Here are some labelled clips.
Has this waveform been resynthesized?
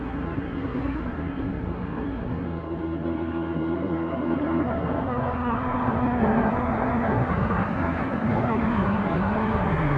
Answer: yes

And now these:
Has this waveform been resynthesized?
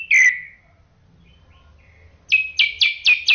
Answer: no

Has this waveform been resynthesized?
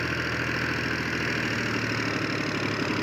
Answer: no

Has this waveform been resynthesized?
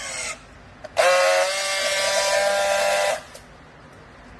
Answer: no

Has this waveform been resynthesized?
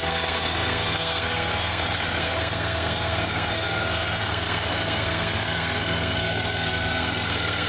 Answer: yes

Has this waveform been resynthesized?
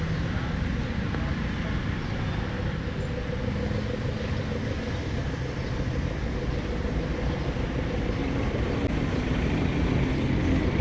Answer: no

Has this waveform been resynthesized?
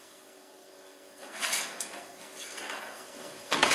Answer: yes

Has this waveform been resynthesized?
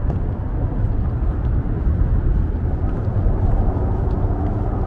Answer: no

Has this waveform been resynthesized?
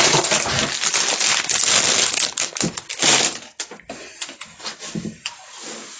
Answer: no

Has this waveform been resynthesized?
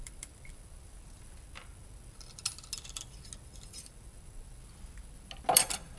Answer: no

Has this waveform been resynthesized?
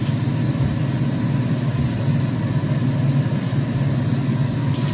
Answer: no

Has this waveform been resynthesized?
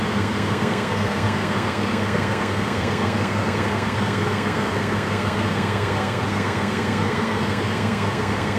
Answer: yes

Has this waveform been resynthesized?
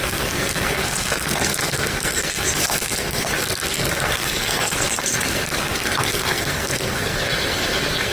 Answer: yes